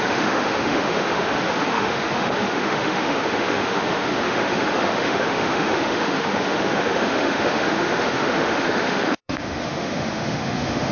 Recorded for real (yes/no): no